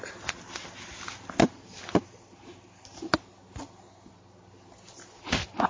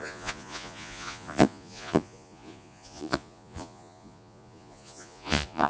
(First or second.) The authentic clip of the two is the first